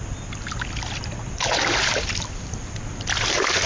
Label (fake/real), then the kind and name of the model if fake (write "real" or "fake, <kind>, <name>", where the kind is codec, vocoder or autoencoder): fake, vocoder, BigVGAN v2